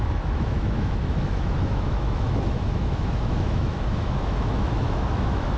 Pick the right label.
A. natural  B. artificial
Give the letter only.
B